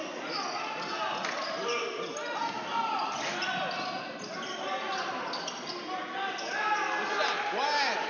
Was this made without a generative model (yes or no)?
yes